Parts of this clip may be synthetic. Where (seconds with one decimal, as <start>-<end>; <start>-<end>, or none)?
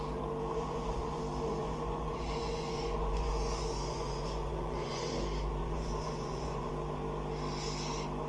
0.5-1.2; 1.6-5.1; 5.6-6.7